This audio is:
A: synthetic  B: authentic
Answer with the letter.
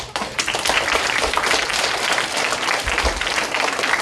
A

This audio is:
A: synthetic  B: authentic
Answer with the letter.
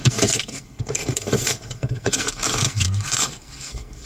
A